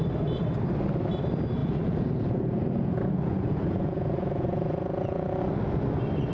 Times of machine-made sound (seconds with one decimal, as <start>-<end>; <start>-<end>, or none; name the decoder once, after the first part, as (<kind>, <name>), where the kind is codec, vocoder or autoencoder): 1.6-5.4 (vocoder, Vocos)